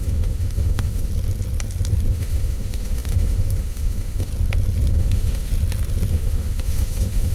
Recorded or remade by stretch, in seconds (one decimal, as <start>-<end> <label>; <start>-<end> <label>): 0.0-1.1 remade; 1.1-2.1 recorded; 2.1-4.3 remade; 4.3-4.9 recorded; 4.9-5.5 remade; 5.5-6.1 recorded; 6.1-7.3 remade